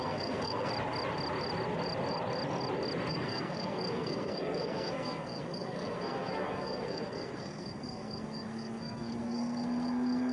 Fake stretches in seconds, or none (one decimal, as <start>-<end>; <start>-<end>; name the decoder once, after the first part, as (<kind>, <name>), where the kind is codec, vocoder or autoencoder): 0.0-0.7 (codec, SNAC); 3.1-10.3